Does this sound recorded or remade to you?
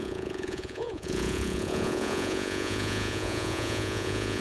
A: remade